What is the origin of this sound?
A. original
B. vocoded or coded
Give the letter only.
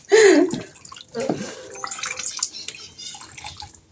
A